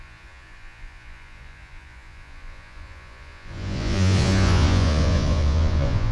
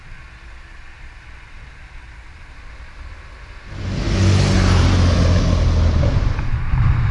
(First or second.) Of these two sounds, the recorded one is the second